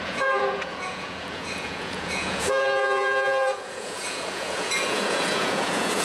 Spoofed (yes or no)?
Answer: yes